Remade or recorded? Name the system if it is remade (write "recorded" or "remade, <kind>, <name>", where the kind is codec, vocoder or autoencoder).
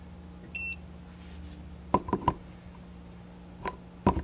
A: recorded